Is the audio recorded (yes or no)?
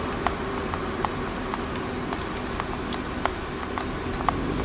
yes